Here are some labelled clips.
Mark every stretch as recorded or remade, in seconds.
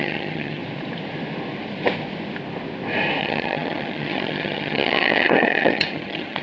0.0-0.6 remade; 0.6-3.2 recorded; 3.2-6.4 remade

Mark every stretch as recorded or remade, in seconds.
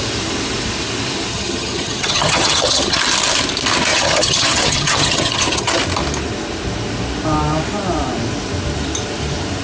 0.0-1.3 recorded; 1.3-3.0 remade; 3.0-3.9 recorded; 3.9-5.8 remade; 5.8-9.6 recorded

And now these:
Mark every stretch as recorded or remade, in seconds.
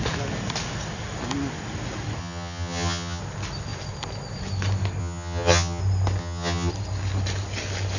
0.0-2.2 recorded; 2.2-3.2 remade; 3.2-5.0 recorded; 5.0-5.8 remade; 5.8-6.2 recorded; 6.2-6.7 remade; 6.7-8.0 recorded